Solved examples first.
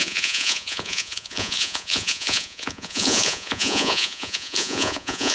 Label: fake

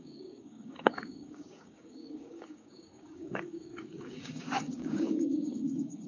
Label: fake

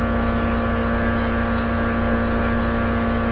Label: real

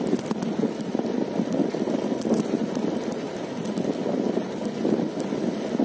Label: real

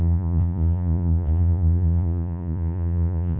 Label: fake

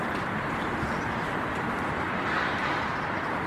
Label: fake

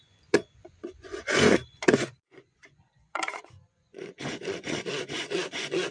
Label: fake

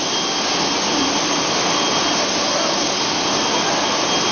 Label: real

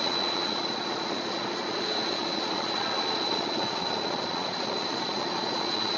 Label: fake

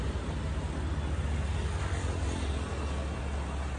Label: real